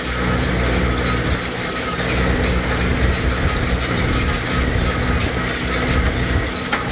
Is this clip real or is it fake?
real